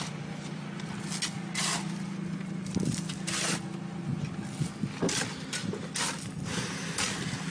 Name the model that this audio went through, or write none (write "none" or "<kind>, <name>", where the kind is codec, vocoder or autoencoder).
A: none